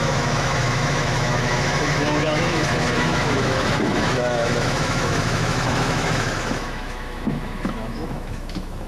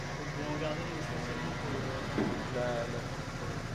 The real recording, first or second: second